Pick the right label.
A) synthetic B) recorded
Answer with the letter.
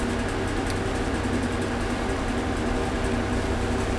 B